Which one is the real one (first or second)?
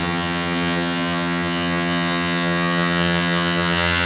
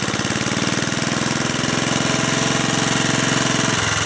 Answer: second